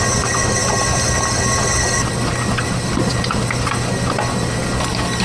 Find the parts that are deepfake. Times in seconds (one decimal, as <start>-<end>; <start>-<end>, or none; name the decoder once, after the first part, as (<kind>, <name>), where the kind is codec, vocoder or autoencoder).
none